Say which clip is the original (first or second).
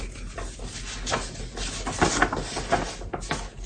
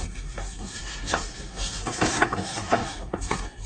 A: first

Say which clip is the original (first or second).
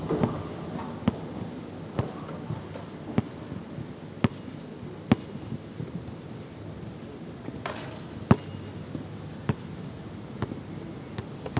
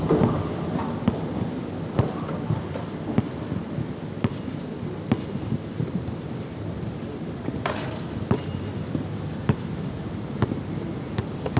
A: first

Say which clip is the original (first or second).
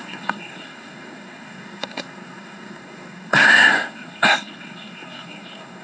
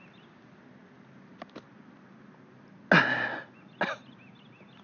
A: second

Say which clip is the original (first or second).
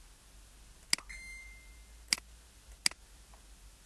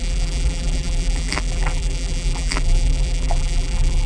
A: first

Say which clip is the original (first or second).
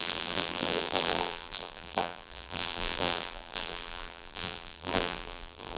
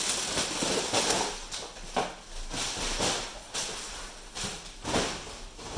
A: second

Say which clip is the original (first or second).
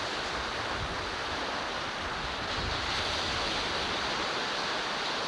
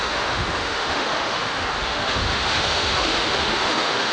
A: first